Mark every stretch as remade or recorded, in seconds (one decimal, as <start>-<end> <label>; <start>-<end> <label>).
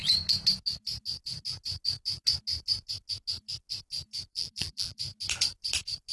0.0-4.3 recorded; 4.3-5.0 remade; 5.0-6.1 recorded